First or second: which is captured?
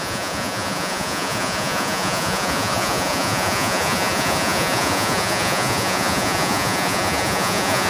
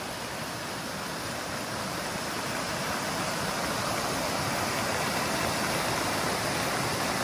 second